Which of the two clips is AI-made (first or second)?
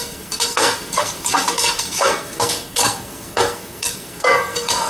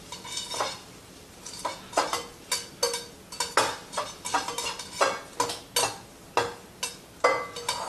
first